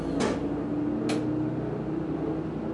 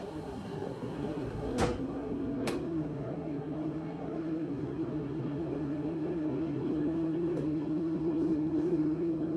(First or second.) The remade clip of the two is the second